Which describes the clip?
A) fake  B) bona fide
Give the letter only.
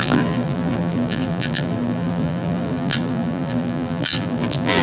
A